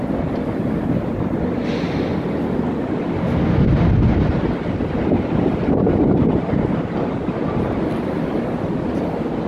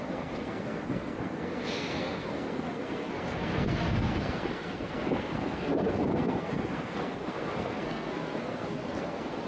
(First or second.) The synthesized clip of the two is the second